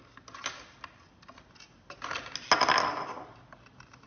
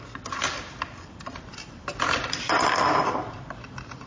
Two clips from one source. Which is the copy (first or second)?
second